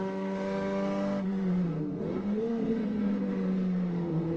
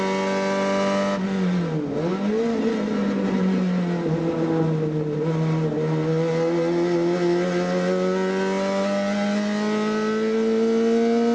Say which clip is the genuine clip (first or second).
second